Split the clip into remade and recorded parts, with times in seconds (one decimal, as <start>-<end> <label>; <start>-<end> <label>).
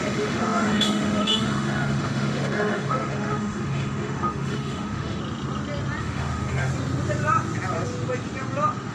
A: 0.0-5.2 remade; 5.2-6.0 recorded; 6.0-6.7 remade; 6.7-8.9 recorded